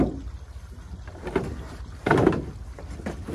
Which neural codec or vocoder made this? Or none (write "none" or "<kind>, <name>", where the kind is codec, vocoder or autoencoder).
none